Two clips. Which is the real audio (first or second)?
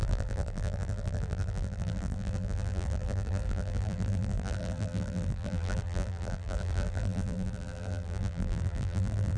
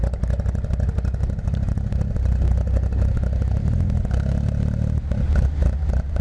second